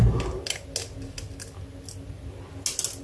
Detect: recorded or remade recorded